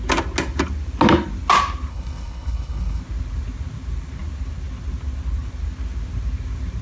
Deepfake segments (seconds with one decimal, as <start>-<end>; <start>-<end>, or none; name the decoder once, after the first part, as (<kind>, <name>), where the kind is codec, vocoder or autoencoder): 1.9-3.0 (codec, HILCodec)